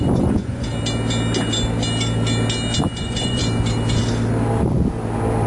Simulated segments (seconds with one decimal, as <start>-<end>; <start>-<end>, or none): 0.0-0.7; 3.0-3.4